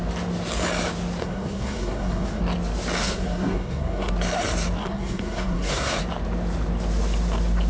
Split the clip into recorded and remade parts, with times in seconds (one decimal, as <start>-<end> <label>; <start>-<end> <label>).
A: 0.0-1.2 recorded; 1.2-2.4 remade; 2.4-3.0 recorded; 3.0-4.1 remade; 4.1-4.8 recorded; 4.8-6.0 remade; 6.0-7.7 recorded